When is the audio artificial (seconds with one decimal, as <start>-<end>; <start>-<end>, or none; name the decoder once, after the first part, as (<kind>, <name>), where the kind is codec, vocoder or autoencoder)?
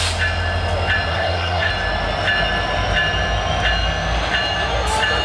1.1-1.7 (codec, SNAC)